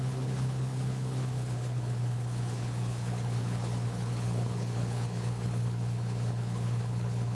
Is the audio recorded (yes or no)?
no